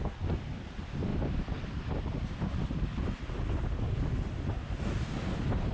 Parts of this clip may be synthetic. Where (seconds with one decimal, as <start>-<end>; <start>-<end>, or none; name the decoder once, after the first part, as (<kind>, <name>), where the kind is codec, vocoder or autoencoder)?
none